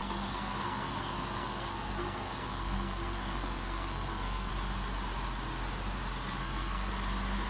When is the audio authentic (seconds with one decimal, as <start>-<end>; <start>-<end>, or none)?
4.5-6.4; 6.9-7.5